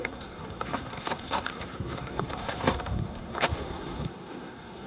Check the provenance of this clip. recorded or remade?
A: remade